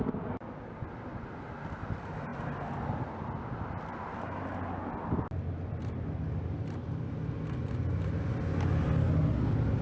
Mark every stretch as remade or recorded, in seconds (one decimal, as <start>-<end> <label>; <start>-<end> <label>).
0.0-9.8 recorded